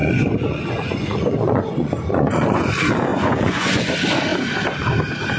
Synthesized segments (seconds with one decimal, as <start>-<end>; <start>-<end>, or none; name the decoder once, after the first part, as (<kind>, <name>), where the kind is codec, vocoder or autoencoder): 0.0-2.7 (vocoder, Vocos); 3.1-3.9